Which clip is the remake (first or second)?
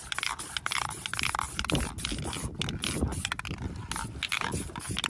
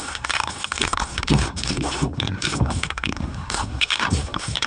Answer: second